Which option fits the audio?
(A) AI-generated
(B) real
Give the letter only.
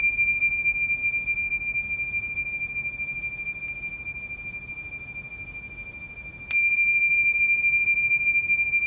B